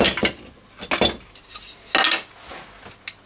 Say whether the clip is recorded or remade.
recorded